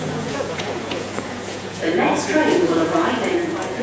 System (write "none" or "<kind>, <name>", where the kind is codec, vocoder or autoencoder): vocoder, Vocos